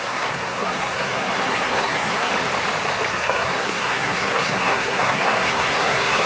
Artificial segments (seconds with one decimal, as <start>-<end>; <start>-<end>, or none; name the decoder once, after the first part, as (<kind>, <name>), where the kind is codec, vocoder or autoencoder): 0.0-2.3 (codec, SNAC); 3.1-6.3